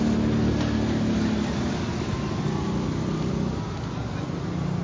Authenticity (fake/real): real